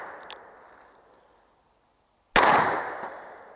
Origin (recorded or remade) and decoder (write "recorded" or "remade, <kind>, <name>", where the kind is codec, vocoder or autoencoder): recorded